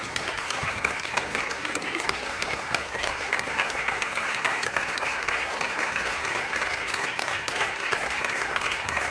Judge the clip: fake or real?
fake